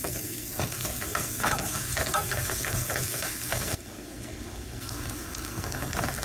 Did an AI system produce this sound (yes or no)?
yes